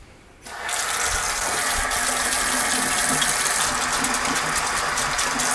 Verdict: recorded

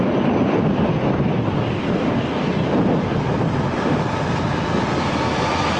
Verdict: recorded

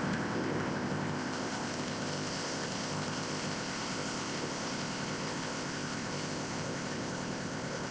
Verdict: remade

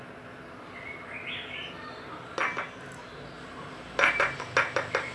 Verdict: recorded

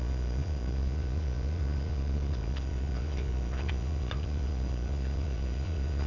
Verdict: remade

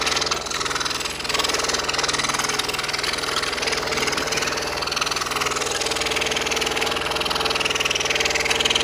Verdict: recorded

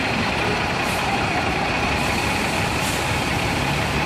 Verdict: remade